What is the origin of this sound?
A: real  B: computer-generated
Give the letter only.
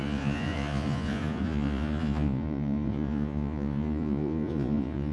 B